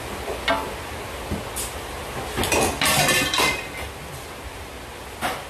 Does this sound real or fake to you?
real